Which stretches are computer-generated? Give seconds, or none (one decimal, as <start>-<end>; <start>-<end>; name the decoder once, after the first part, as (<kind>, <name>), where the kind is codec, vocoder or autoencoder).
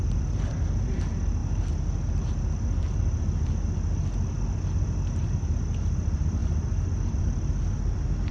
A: 0.0-1.4 (vocoder, BigVGAN v2); 5.1-6.4; 7.1-8.3